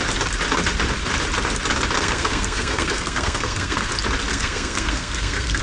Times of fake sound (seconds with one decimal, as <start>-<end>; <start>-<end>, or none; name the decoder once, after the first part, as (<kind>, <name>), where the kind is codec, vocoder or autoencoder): 2.0-3.9 (codec, SNAC); 4.3-5.6